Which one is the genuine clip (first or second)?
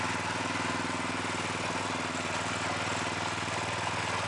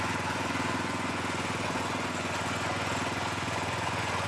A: first